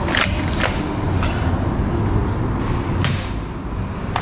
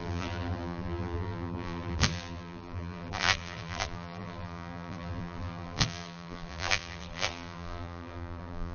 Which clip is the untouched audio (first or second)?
first